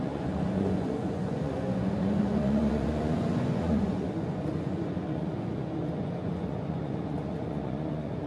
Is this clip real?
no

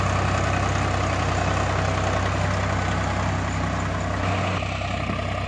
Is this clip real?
yes